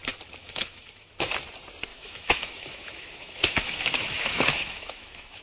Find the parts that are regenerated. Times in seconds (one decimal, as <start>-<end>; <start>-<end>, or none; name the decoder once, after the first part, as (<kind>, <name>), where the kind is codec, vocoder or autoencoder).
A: 0.4-1.1 (autoencoder, DAC-VAE); 1.9-5.4

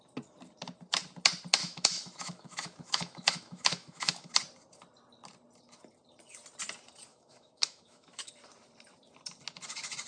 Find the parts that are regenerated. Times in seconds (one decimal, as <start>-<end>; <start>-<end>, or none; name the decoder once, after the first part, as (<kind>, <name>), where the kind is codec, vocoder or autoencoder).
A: 1.6-4.3 (autoencoder, DAC-VAE); 7.1-8.3

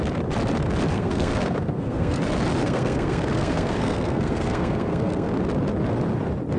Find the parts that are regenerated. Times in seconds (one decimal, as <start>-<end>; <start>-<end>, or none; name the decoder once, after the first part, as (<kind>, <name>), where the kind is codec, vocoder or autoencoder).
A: 0.9-2.2 (codec, SNAC); 2.6-5.3